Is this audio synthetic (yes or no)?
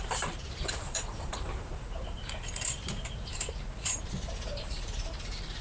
yes